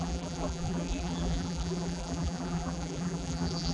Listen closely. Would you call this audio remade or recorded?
remade